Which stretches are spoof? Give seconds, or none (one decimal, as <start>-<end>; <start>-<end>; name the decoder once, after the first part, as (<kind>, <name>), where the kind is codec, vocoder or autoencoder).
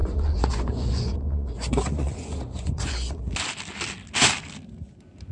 0.0-3.2 (vocoder, Vocos)